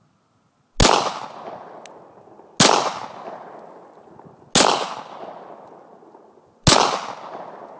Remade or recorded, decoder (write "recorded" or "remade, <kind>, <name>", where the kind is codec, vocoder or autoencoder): recorded